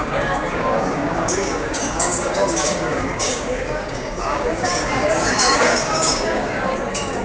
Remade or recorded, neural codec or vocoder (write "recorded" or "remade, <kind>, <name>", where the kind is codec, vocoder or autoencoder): remade, codec, DAC